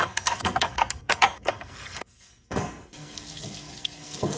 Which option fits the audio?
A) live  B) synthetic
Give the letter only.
B